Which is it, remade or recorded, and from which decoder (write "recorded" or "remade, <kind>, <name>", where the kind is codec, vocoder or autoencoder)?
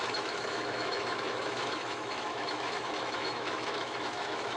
remade, autoencoder, DAC-VAE